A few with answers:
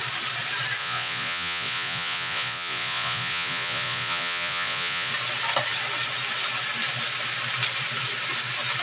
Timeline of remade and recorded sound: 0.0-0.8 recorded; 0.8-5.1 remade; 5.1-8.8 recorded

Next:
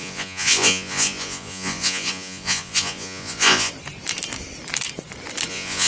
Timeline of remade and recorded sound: 0.0-3.7 remade; 3.7-5.5 recorded; 5.5-5.9 remade